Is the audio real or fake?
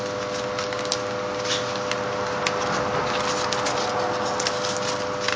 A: real